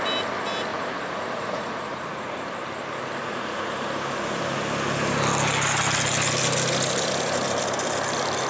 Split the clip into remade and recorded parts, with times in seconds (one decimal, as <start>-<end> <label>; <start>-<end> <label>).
0.0-0.7 recorded; 0.7-2.5 remade; 2.5-3.2 recorded; 3.2-3.7 remade; 3.7-8.5 recorded